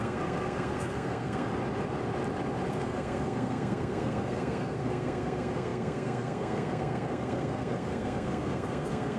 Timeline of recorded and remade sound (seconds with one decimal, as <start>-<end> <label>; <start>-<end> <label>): 0.0-1.5 remade; 1.5-2.7 recorded; 2.7-9.2 remade